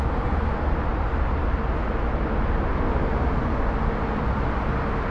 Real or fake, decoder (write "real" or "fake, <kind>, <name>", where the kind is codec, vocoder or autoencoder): real